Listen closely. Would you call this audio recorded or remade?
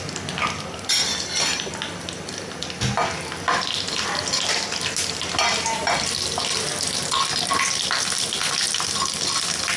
recorded